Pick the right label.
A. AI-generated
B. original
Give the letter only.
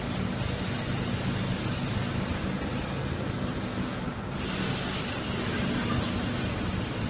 B